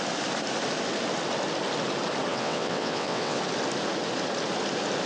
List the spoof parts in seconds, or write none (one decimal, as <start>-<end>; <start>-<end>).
2.3-3.4